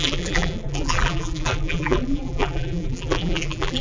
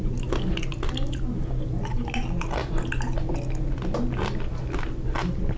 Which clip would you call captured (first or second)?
second